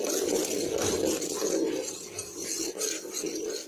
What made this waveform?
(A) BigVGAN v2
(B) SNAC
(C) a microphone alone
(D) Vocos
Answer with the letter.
C